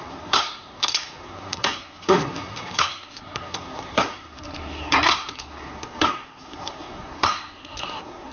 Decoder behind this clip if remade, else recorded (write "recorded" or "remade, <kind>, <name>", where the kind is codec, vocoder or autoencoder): remade, codec, SNAC